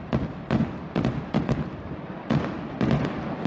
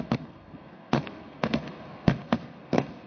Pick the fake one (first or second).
second